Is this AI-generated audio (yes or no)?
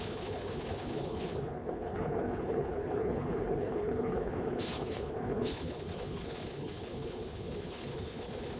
yes